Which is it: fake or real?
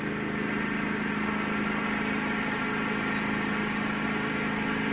real